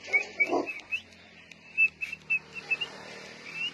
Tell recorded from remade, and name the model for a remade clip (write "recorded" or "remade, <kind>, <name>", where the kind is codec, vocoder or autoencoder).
recorded